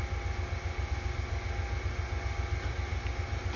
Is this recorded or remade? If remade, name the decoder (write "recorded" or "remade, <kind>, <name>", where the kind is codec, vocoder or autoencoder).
recorded